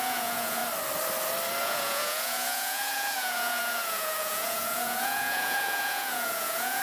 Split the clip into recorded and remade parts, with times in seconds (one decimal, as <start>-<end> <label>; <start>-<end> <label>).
0.0-0.6 remade; 0.6-1.6 recorded; 1.6-6.8 remade